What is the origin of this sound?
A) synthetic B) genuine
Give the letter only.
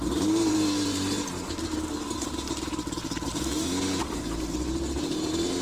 A